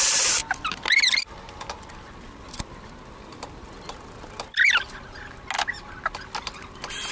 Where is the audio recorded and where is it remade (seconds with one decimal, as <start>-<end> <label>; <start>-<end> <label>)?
0.0-7.1 recorded